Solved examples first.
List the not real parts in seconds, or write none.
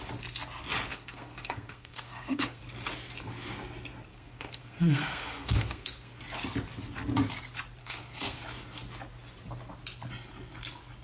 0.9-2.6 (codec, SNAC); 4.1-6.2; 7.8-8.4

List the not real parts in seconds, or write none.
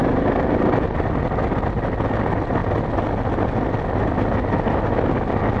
none